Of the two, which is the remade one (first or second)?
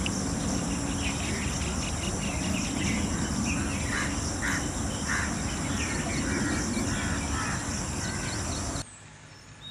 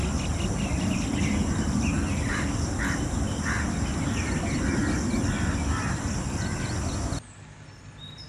second